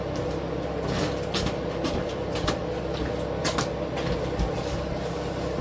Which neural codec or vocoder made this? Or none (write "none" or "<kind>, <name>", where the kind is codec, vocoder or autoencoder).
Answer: none